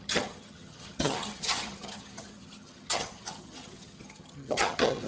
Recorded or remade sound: remade